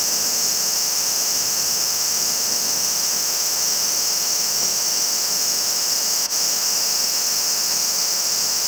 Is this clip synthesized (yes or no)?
yes